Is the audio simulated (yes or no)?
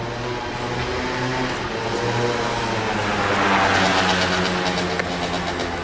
no